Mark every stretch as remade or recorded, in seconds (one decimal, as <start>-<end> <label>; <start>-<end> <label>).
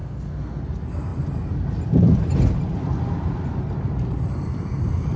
0.0-0.6 remade; 0.6-5.2 recorded